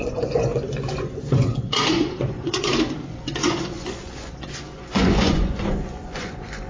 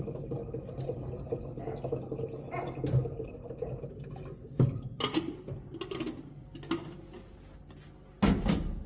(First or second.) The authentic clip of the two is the second